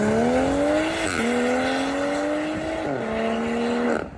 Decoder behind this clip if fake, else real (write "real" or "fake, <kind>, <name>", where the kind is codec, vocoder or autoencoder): real